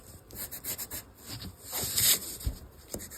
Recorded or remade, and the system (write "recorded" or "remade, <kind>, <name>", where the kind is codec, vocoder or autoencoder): remade, vocoder, BigVGAN v2